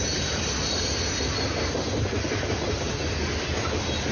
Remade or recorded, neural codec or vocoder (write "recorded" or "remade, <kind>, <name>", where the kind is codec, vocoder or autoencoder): recorded